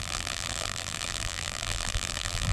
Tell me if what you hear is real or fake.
fake